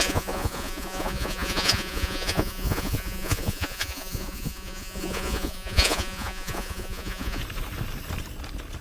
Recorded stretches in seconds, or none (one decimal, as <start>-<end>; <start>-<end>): 7.4-8.8